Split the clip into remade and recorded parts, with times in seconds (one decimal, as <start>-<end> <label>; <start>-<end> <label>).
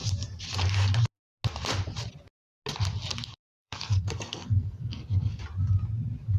0.0-3.3 recorded; 3.3-5.4 remade; 5.4-6.4 recorded